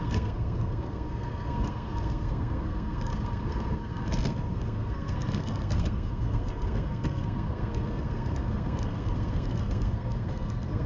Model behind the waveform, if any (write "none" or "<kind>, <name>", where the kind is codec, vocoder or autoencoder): codec, SNAC